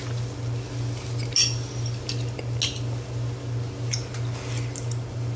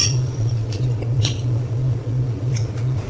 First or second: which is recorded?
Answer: first